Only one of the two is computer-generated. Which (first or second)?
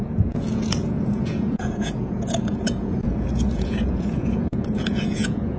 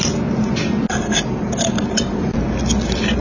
first